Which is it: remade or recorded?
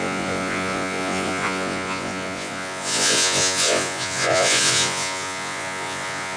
remade